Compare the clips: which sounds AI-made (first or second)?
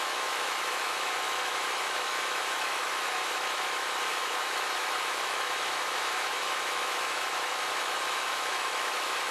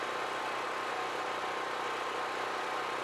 first